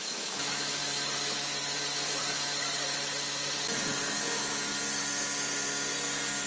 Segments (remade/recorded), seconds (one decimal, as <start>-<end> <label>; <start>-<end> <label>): 0.0-0.8 remade; 0.8-4.1 recorded; 4.1-4.7 remade; 4.7-6.5 recorded